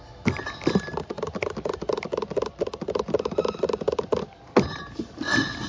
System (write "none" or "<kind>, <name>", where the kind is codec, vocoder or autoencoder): none